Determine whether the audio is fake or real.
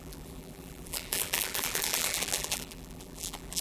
fake